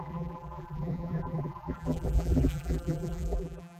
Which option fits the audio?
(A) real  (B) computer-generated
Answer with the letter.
B